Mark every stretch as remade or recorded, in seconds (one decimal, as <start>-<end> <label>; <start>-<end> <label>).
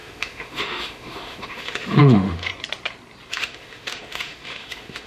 0.0-2.5 remade; 2.5-3.3 recorded; 3.3-5.1 remade